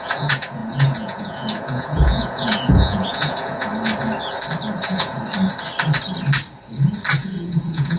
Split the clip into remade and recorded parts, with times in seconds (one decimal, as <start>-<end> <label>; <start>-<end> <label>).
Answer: 0.0-3.7 remade; 3.7-4.8 recorded; 4.8-5.2 remade; 5.2-7.2 recorded; 7.2-8.0 remade